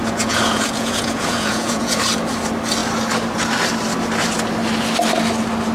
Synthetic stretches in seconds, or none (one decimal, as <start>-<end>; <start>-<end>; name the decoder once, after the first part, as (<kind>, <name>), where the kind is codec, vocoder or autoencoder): 0.0-2.0 (vocoder, Vocos)